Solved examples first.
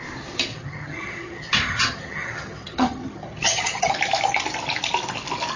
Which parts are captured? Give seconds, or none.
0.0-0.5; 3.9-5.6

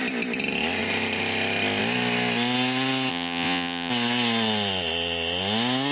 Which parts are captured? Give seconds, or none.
0.0-3.1; 3.9-5.9

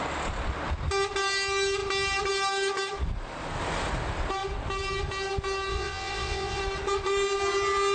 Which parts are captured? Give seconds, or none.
0.0-5.7; 6.6-7.9